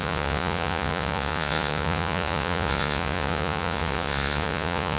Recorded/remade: remade